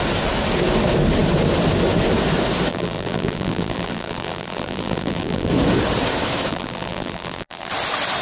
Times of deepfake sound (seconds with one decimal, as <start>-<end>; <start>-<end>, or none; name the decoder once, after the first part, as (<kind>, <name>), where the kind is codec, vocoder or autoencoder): 2.7-5.5 (vocoder, BigVGAN v2); 6.5-7.7